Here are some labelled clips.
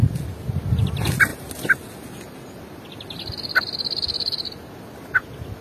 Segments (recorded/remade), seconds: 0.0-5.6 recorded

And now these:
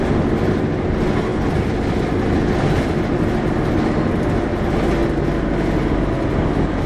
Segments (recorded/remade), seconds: 0.0-6.9 recorded

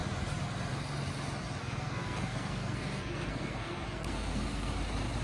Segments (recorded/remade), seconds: 0.0-1.6 recorded; 1.6-4.7 remade; 4.7-5.2 recorded